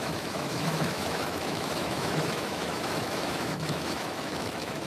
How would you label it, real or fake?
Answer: fake